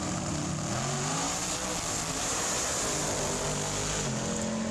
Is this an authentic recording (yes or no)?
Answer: yes